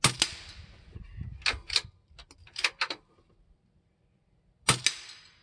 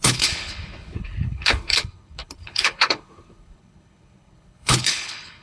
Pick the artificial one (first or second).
second